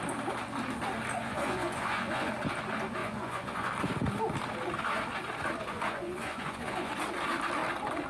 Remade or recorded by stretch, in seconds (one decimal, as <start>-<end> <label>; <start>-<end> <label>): 0.0-1.2 recorded; 1.2-2.3 remade; 2.3-3.0 recorded; 3.0-3.7 remade; 3.7-5.7 recorded; 5.7-6.9 remade; 6.9-8.1 recorded